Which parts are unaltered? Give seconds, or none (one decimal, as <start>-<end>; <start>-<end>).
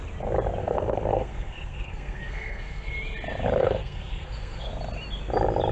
0.0-0.6; 2.9-3.6; 4.7-5.7